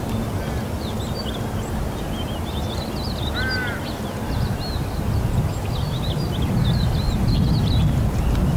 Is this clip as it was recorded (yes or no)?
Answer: yes